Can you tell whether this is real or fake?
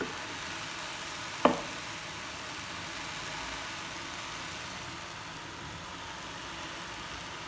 real